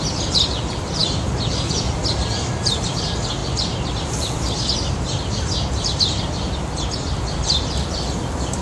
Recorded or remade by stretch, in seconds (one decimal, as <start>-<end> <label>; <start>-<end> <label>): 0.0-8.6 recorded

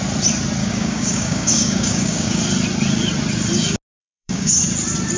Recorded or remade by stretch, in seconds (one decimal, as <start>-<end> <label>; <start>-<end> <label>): 0.0-0.6 recorded; 0.6-2.4 remade; 2.4-4.0 recorded; 4.0-4.5 remade; 4.5-5.2 recorded

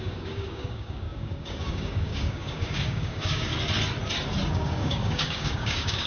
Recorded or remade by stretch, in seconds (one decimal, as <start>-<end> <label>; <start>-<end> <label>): 0.0-3.5 remade; 3.5-4.5 recorded; 4.5-6.1 remade